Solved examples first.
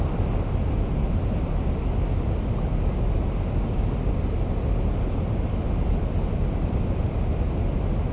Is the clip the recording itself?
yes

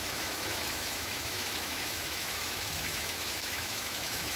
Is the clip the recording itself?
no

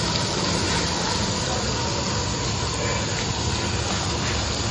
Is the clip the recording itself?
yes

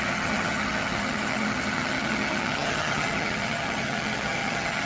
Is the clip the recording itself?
no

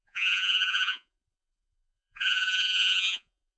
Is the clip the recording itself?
no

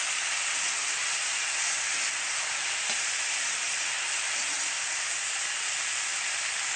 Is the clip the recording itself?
yes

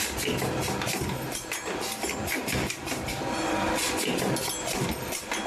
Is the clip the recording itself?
yes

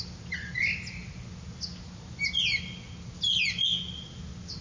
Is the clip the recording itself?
yes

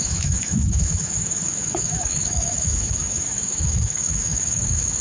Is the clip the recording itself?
no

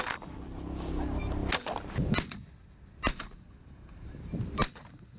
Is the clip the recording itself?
yes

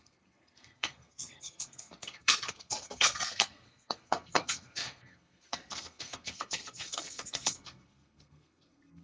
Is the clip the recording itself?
no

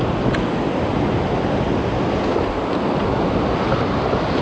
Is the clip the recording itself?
yes